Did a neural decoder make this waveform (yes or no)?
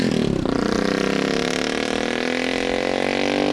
no